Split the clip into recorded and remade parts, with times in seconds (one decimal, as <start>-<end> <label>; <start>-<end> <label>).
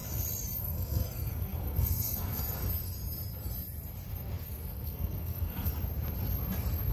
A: 0.0-0.6 recorded; 0.6-2.4 remade; 2.4-4.1 recorded; 4.1-5.7 remade; 5.7-6.9 recorded